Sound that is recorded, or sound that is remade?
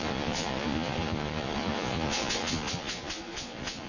remade